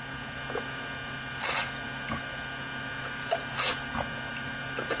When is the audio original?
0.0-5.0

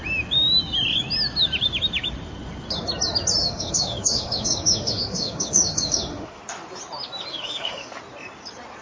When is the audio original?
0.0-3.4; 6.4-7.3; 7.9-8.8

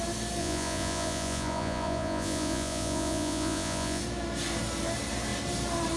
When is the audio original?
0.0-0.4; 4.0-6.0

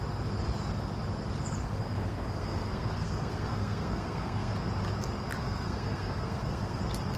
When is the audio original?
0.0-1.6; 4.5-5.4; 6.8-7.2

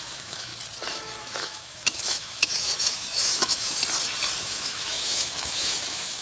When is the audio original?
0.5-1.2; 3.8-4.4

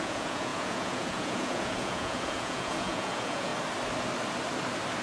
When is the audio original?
3.5-5.0

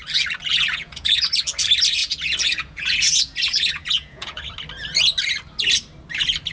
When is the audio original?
0.0-0.5; 1.3-2.0; 4.5-6.5